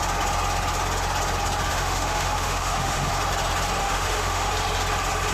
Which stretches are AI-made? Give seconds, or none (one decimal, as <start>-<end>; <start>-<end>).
1.7-3.1; 3.8-4.5